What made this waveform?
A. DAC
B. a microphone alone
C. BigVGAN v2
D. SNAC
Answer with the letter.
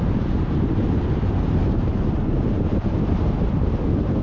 C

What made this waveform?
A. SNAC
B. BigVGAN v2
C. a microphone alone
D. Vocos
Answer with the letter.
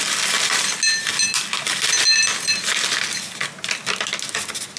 C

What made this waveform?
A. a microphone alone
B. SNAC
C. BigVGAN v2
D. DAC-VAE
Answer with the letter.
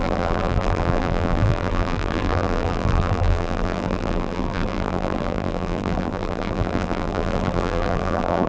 C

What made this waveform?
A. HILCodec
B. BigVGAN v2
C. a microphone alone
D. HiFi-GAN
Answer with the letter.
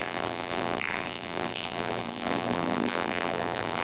B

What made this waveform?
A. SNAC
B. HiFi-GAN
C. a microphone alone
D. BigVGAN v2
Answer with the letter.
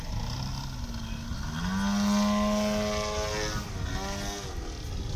C